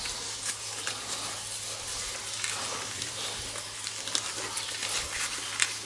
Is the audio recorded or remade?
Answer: recorded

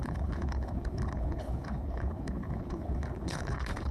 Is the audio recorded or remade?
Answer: remade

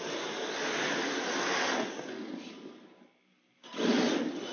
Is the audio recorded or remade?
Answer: recorded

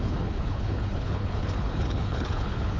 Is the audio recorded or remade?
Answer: remade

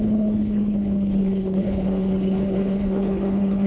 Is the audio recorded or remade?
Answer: remade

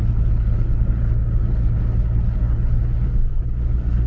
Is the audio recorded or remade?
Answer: remade